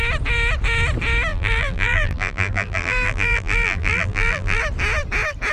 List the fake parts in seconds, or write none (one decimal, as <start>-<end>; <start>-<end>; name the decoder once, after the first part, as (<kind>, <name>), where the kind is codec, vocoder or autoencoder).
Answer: 1.3-4.6 (vocoder, BigVGAN v2)